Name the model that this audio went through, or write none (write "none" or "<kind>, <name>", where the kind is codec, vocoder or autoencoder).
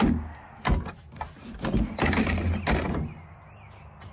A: none